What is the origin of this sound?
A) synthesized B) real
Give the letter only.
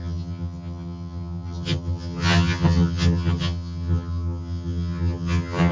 A